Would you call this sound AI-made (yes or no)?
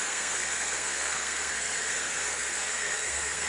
yes